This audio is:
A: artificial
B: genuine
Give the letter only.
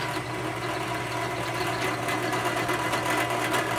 B